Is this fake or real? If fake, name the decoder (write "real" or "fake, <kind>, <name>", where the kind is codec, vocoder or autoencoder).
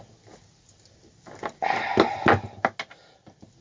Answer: real